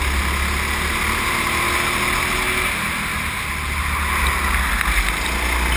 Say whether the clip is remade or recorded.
recorded